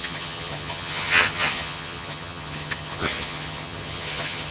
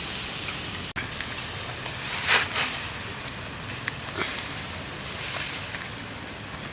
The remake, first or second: first